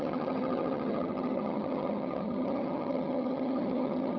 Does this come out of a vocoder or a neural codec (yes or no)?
yes